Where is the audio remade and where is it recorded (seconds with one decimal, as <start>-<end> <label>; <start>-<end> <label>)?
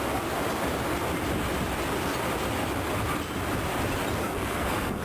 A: 0.0-4.2 recorded; 4.2-5.0 remade